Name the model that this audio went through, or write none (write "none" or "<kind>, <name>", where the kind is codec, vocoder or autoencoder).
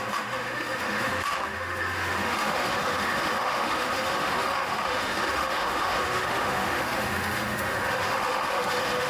autoencoder, DAC-VAE